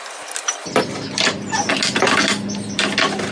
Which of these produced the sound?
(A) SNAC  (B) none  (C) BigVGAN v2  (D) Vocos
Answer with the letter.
B